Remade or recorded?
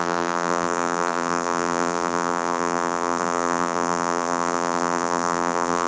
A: remade